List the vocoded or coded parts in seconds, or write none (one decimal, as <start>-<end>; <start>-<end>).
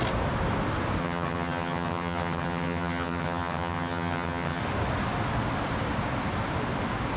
1.0-4.6